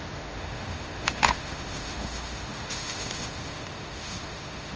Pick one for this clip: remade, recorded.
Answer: remade